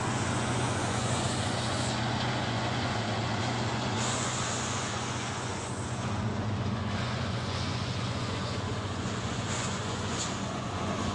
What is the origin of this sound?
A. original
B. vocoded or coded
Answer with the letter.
B